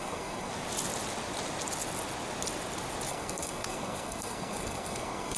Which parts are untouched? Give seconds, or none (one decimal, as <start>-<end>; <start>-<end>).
0.5-3.1